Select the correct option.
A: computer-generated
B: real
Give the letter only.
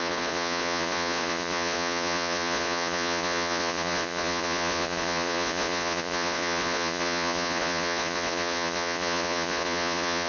A